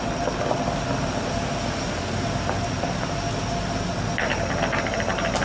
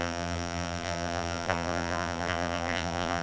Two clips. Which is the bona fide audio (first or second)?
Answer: first